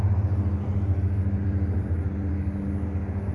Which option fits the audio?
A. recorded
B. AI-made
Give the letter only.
A